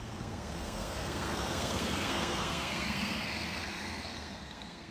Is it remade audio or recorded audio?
remade